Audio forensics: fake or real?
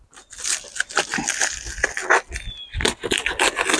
real